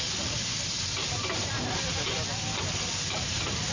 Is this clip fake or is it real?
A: real